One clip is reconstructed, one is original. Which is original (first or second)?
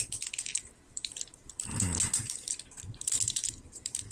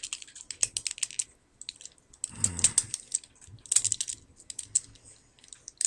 second